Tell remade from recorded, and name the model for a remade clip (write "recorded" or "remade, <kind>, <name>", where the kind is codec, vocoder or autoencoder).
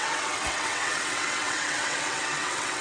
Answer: remade, vocoder, WaveNeXt